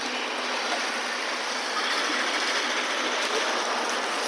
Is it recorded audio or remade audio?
recorded